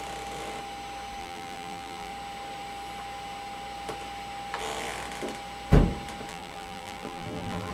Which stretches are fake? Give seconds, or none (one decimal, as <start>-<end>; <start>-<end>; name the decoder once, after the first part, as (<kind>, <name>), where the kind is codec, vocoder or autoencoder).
1.2-2.1 (vocoder, BigVGAN v2); 6.3-7.7